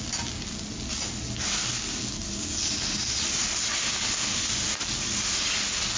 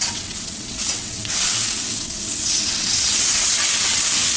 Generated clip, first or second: second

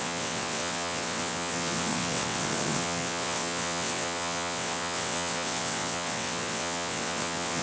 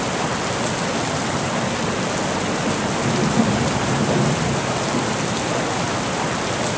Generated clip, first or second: first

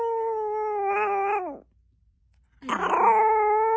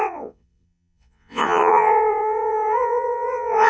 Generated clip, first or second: second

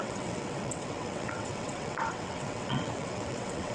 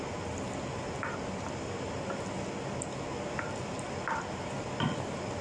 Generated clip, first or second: first